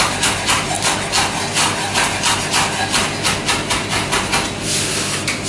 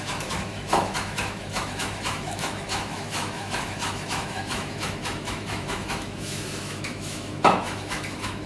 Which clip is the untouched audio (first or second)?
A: first